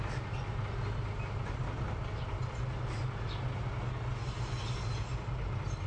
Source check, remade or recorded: recorded